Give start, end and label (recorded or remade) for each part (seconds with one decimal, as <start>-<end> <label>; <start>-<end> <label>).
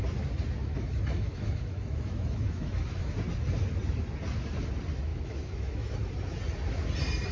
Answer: 0.0-0.6 recorded; 0.6-3.0 remade; 3.0-5.1 recorded; 5.1-6.1 remade; 6.1-7.3 recorded